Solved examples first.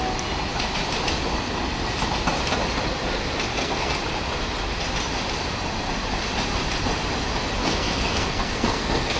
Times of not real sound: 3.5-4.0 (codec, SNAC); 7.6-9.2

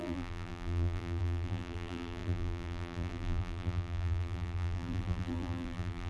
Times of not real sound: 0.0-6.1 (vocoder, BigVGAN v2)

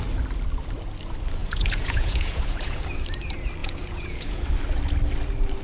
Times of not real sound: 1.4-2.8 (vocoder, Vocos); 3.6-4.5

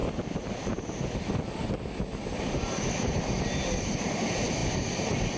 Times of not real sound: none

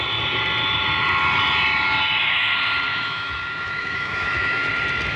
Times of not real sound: 2.9-4.7 (autoencoder, DAC-VAE)